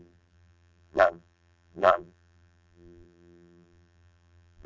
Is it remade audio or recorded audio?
remade